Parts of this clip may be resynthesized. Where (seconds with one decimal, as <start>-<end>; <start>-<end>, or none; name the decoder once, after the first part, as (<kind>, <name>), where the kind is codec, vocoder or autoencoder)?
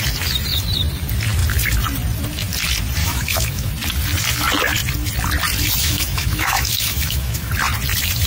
3.0-3.7 (autoencoder, DAC-VAE); 5.8-7.5